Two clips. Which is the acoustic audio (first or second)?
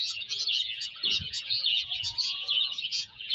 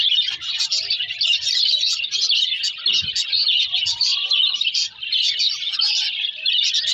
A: second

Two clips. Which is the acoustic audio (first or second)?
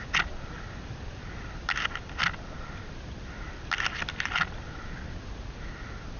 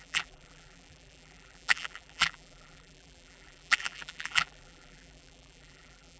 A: first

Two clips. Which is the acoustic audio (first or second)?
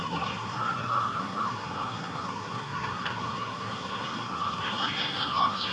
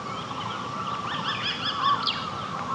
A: second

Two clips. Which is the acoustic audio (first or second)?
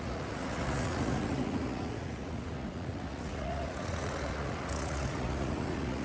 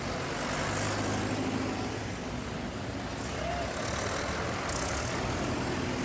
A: second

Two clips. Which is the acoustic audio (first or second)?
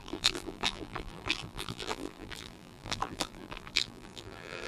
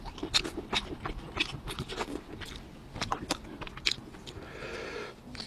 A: second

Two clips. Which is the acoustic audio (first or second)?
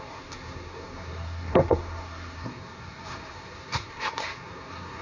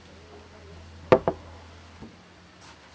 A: second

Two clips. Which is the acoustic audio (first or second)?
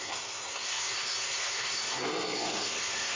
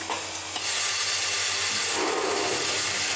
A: second